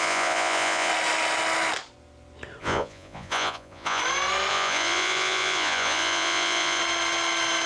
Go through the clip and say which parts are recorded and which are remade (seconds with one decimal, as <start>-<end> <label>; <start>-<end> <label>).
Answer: 0.0-0.9 remade; 0.9-2.6 recorded; 2.6-4.0 remade; 4.0-4.5 recorded; 4.5-6.8 remade; 6.8-7.7 recorded